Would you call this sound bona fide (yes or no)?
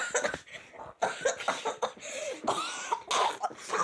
yes